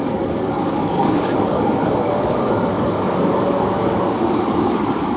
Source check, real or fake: fake